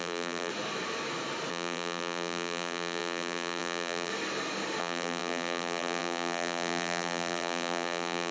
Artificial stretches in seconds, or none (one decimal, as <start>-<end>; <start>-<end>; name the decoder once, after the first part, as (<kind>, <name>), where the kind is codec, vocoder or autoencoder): 0.0-0.5 (vocoder, BigVGAN v2); 1.5-4.1; 4.8-8.3